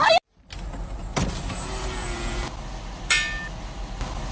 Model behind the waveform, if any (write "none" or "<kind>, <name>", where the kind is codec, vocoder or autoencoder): none